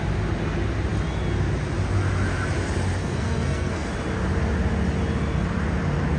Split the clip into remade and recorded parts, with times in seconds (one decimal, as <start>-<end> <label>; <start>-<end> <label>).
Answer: 0.0-3.0 recorded; 3.0-3.9 remade; 3.9-6.2 recorded